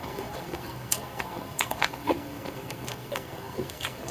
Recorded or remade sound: remade